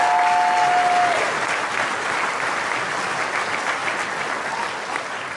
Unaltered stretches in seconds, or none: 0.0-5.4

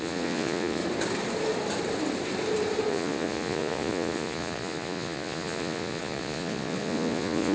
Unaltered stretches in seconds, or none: 0.8-2.9

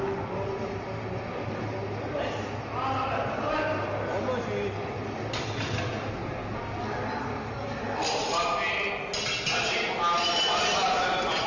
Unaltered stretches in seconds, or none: 0.0-11.5

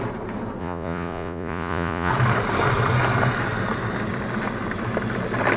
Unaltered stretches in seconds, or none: 0.0-0.6; 2.1-5.6